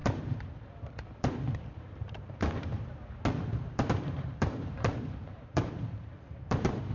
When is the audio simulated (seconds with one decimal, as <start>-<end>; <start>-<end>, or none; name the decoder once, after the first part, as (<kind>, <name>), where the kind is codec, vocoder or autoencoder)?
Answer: 0.0-2.7 (vocoder, BigVGAN v2); 3.4-6.9